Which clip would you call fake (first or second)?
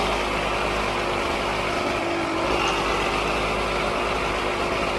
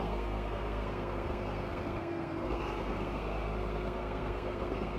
second